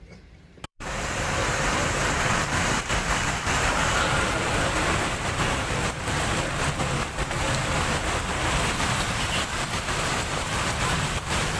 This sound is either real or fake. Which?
fake